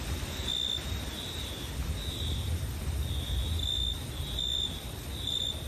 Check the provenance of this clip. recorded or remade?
recorded